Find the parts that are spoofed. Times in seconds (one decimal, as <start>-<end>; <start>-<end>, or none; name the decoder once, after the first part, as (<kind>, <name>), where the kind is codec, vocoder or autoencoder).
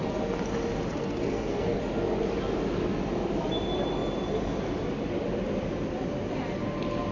0.9-1.8 (codec, SNAC)